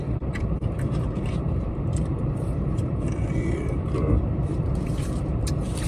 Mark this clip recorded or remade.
remade